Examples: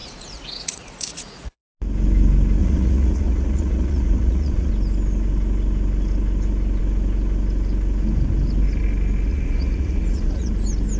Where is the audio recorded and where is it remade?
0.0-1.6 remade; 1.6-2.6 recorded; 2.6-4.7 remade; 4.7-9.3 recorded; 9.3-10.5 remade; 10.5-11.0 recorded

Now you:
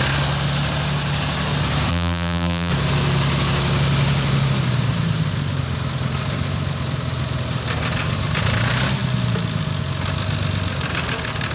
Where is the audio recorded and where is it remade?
0.0-1.9 recorded; 1.9-2.7 remade; 2.7-11.5 recorded

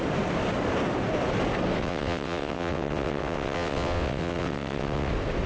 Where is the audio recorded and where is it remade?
0.0-1.8 recorded; 1.8-5.1 remade; 5.1-5.5 recorded

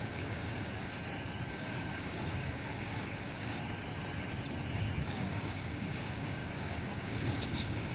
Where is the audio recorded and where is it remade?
0.0-0.9 remade; 0.9-1.5 recorded; 1.5-3.6 remade; 3.6-5.0 recorded; 5.0-7.9 remade

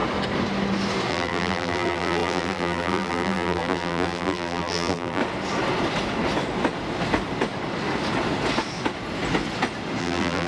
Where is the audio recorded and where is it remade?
0.0-1.1 recorded; 1.1-5.2 remade; 5.2-10.0 recorded; 10.0-10.5 remade

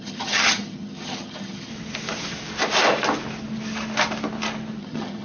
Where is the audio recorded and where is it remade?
0.0-1.7 remade; 1.7-4.8 recorded; 4.8-5.2 remade